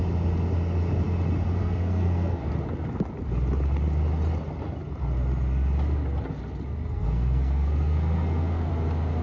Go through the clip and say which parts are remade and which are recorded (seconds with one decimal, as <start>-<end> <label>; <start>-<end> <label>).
0.0-1.6 recorded; 1.6-2.5 remade; 2.5-6.9 recorded; 6.9-8.7 remade; 8.7-9.2 recorded